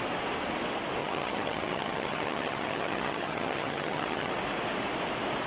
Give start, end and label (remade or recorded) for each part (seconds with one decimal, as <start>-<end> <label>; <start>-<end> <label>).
0.0-1.0 recorded; 1.0-4.3 remade; 4.3-5.5 recorded